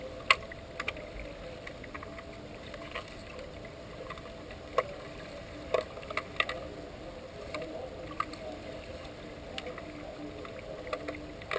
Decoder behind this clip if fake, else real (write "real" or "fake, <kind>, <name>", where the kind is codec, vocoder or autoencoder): real